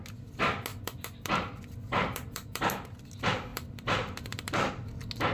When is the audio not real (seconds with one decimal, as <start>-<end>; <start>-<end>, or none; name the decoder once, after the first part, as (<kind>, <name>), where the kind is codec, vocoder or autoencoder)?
0.7-2.9 (vocoder, BigVGAN v2); 3.5-4.7